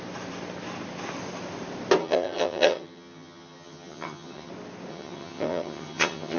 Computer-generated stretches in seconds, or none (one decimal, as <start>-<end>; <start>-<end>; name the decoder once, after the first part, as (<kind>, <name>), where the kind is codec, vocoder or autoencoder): 2.0-4.5 (vocoder, HiFi-GAN); 4.9-6.4